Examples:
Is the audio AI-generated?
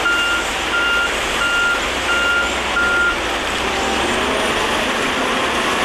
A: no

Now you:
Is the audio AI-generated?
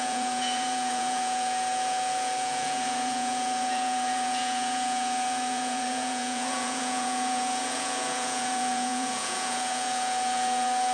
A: yes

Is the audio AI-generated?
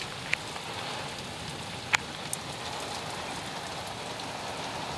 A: no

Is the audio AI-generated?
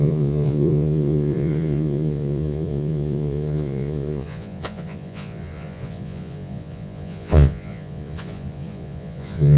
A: yes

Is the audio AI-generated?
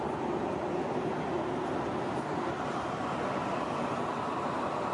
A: no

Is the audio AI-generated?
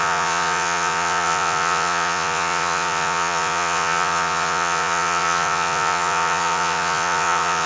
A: yes